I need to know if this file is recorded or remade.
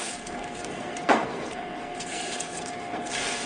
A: remade